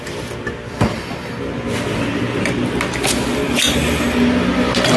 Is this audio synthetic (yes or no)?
no